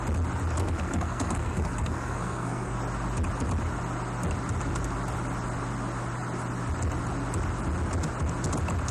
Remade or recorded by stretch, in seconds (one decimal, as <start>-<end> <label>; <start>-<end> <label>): 0.0-0.6 recorded; 0.6-2.8 remade; 2.8-8.9 recorded